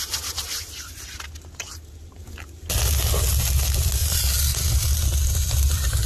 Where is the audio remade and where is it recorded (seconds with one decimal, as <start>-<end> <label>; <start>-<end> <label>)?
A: 0.0-6.1 recorded